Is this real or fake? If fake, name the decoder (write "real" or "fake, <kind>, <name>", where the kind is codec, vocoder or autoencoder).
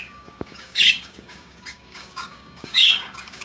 fake, codec, DAC